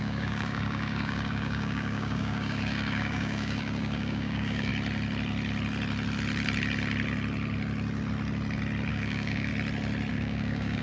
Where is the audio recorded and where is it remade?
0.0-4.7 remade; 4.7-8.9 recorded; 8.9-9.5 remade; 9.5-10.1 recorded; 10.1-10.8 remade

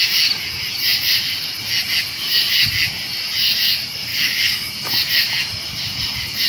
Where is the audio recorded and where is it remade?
0.0-4.1 recorded; 4.1-4.7 remade; 4.7-6.5 recorded

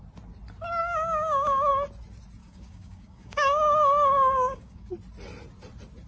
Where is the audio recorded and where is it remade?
0.0-0.8 recorded; 0.8-1.7 remade; 1.7-2.4 recorded; 2.4-4.9 remade; 4.9-6.1 recorded